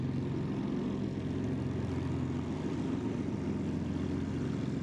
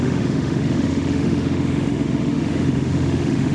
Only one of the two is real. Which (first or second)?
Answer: first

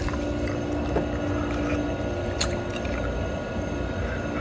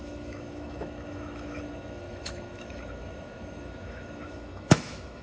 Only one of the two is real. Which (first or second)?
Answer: first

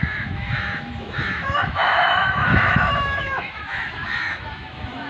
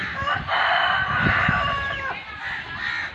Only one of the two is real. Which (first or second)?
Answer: second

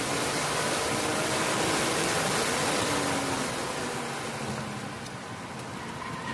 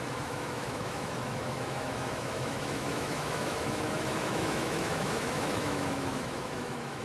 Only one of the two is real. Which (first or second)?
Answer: first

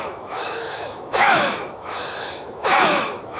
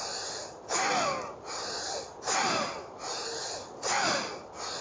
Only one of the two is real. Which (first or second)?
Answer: second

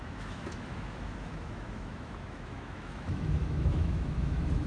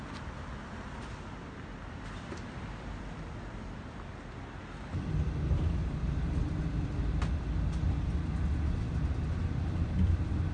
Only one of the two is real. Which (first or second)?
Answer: second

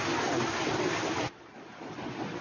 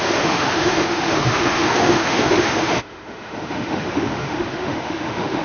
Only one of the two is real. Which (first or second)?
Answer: first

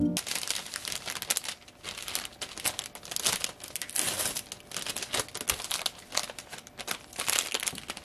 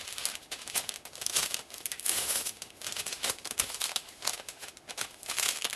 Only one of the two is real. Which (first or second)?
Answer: first